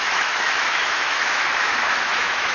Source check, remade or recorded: remade